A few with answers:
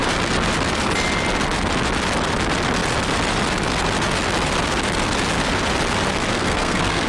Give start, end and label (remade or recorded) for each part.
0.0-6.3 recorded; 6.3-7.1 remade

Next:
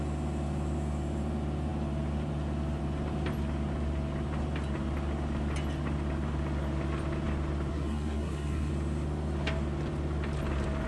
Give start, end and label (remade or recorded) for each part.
0.0-7.7 recorded; 7.7-8.7 remade; 8.7-10.9 recorded

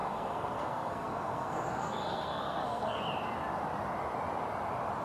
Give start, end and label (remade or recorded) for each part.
0.0-3.0 remade; 3.0-5.0 recorded

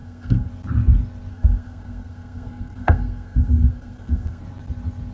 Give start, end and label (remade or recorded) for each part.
0.0-0.5 remade; 0.5-1.3 recorded; 1.3-4.4 remade; 4.4-5.1 recorded

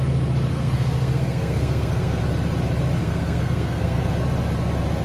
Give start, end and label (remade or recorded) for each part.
0.0-0.5 recorded; 0.5-2.2 remade; 2.2-3.0 recorded; 3.0-4.1 remade; 4.1-5.0 recorded